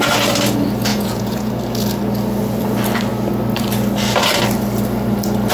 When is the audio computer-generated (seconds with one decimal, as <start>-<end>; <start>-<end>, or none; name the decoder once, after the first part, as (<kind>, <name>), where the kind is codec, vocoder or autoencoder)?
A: 0.9-1.5 (vocoder, Vocos)